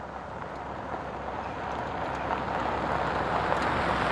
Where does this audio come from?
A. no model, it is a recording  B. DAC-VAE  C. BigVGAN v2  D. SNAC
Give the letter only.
A